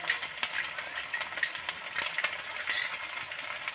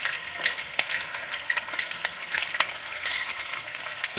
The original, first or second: first